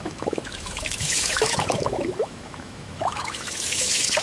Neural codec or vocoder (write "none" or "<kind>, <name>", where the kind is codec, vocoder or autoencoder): autoencoder, DAC-VAE